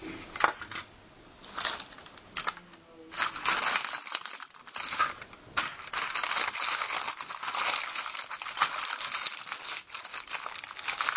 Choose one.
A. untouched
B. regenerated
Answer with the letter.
A